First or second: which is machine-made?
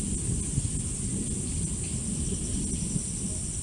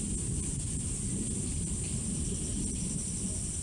second